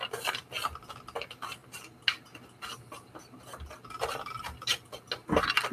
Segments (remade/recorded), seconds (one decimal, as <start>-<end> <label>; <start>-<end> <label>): 0.0-5.7 recorded